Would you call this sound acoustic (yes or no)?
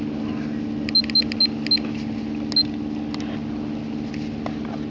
yes